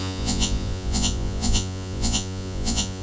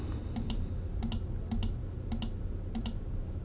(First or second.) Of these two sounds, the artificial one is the first